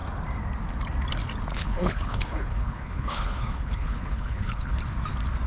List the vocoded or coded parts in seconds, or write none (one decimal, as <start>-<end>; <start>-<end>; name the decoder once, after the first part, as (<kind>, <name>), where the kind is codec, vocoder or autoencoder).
1.5-4.8 (codec, HILCodec)